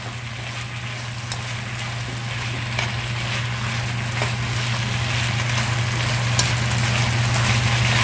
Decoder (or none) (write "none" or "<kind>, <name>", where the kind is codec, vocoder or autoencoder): none